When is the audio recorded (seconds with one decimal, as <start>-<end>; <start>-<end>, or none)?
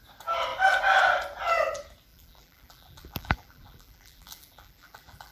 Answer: 0.0-2.1